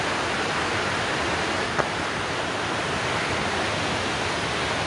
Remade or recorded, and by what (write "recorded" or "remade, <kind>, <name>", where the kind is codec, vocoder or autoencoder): recorded